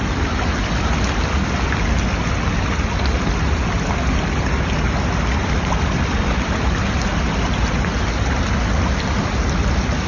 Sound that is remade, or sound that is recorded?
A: recorded